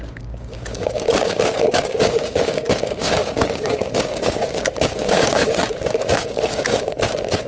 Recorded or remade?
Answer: remade